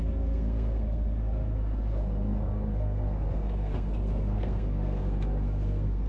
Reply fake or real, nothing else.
fake